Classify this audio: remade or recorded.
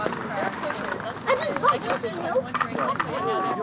recorded